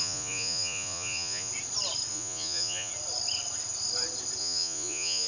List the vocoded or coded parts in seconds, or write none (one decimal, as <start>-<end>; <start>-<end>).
0.0-1.5; 2.1-2.9; 4.4-5.3